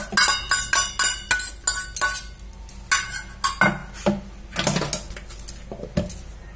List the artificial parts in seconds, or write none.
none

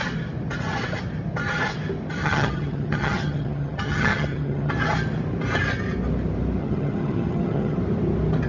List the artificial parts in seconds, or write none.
2.2-4.7 (vocoder, HiFi-GAN); 6.6-7.8

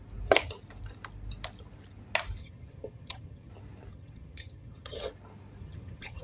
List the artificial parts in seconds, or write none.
2.4-3.5 (vocoder, HiFi-GAN); 3.9-5.1; 5.6-6.2

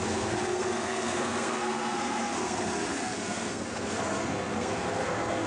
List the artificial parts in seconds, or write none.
0.0-5.5 (codec, SNAC)